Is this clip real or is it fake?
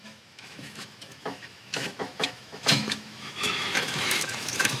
fake